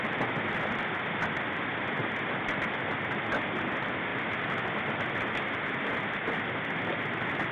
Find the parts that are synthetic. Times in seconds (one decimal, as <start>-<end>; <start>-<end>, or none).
none